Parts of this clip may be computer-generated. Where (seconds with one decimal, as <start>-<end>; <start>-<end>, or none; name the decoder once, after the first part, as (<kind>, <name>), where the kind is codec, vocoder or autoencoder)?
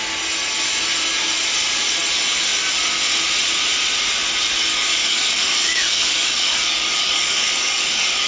4.7-8.3 (codec, DAC)